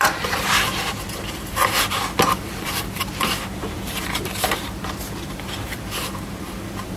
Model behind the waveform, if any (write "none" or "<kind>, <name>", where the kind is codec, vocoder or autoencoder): vocoder, BigVGAN v2